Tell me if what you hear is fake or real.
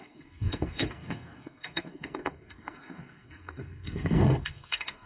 fake